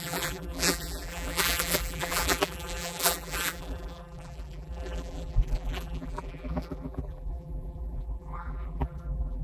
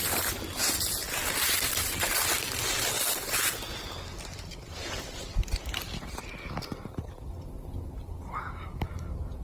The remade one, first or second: first